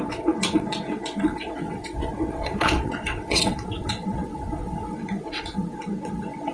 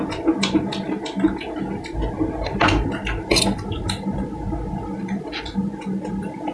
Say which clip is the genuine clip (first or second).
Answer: second